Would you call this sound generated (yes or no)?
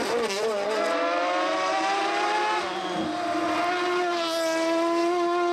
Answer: no